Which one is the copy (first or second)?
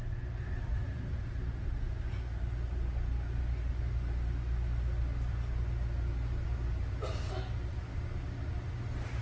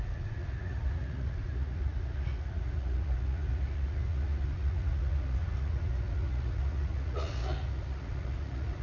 second